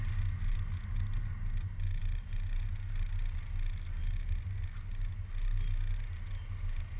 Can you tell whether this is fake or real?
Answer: real